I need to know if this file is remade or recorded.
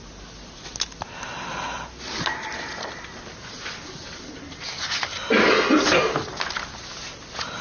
recorded